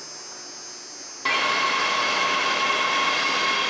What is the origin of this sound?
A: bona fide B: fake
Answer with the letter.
A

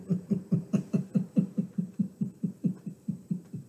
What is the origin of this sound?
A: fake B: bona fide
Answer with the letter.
A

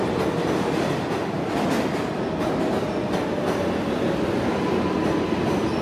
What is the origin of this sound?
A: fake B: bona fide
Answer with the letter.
B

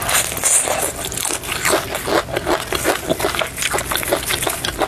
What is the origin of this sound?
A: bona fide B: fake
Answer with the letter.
A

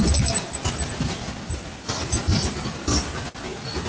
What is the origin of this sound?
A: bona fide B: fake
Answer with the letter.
A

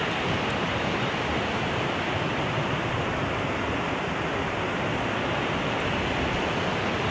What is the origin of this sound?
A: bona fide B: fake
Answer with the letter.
A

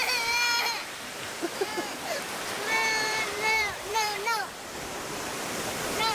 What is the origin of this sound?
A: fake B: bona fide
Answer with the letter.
A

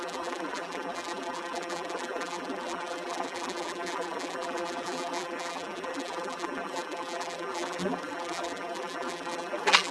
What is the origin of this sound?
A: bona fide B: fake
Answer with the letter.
B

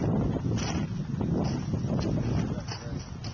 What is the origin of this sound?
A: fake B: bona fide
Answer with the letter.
B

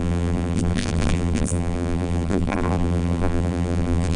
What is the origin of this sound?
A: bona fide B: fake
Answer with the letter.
B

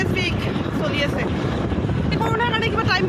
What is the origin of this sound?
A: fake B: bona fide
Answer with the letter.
A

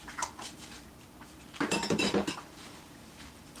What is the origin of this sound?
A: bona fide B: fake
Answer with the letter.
B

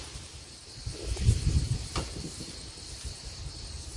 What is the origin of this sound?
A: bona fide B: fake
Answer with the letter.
B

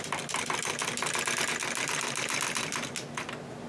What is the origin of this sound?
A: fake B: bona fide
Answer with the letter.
B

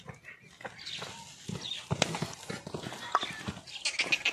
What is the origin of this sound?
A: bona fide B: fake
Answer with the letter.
A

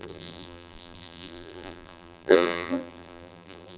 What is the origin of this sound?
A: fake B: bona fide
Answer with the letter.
A